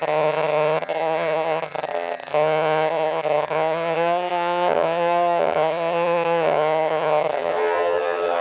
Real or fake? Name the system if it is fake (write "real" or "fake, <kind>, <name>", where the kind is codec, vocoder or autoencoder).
fake, vocoder, HiFi-GAN